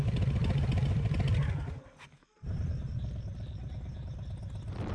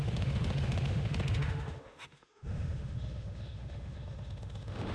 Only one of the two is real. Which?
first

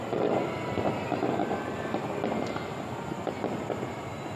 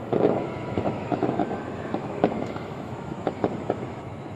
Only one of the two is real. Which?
first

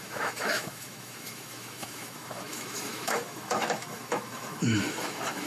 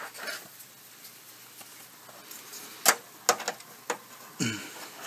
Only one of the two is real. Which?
second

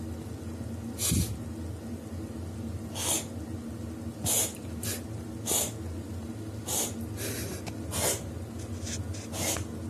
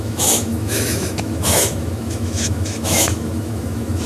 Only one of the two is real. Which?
first